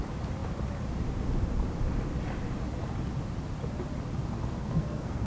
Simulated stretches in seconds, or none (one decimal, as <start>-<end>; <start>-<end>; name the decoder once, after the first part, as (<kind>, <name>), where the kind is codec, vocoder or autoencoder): 4.5-5.3 (codec, SNAC)